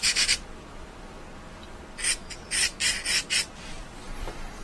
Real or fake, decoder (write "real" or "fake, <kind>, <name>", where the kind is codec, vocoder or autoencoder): fake, vocoder, BigVGAN v2